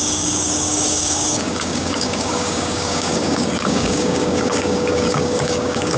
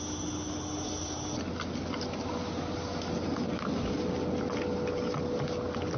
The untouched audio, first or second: second